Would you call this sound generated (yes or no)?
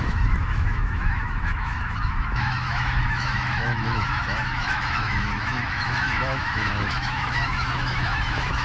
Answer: yes